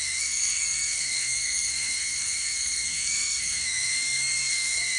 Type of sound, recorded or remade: remade